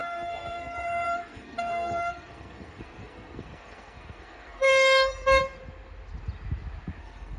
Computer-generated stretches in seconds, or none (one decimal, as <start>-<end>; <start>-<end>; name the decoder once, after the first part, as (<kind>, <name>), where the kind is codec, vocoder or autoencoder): 0.0-5.4 (codec, SNAC); 7.0-7.4